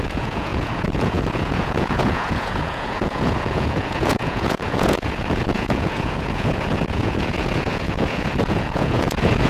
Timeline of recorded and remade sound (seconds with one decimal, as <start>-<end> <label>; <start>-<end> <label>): 0.0-9.5 remade